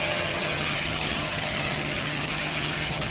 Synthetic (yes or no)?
yes